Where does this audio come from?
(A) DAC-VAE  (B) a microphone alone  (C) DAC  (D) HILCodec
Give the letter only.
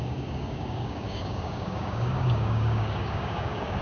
C